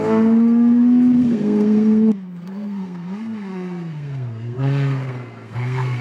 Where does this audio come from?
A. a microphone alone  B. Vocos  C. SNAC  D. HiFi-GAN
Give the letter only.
C